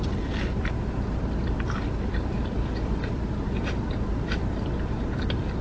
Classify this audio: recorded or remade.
remade